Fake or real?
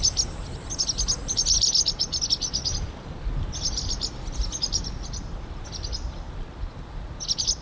real